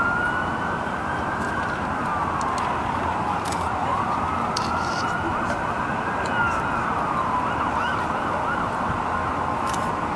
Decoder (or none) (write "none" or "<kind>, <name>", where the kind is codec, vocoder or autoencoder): none